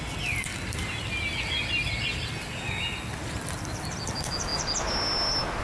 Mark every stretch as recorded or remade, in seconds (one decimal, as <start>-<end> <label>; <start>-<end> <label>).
0.0-5.6 recorded